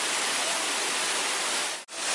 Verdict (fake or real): real